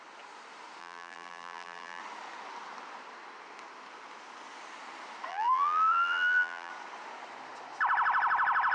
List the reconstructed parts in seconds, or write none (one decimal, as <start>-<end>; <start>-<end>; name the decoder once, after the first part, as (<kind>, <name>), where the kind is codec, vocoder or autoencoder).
0.8-2.0 (vocoder, BigVGAN v2); 5.3-6.7